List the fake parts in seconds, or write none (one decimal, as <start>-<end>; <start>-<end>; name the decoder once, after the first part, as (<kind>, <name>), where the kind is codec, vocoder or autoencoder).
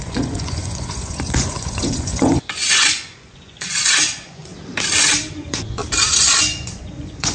0.0-4.5 (vocoder, Vocos); 5.3-5.8; 6.4-7.3